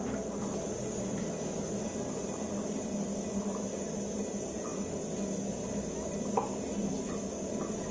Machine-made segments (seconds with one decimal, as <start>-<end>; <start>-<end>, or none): none